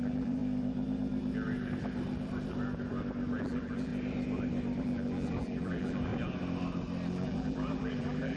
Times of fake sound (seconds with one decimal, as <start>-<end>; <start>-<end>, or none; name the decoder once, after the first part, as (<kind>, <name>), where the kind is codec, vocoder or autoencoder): 0.0-0.4 (vocoder, BigVGAN v2); 3.4-3.9; 4.8-6.1; 7.1-8.4